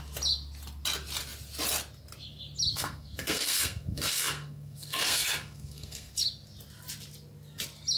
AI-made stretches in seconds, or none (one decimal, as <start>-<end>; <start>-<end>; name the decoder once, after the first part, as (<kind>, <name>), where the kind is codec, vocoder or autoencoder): 2.7-6.1 (codec, SNAC)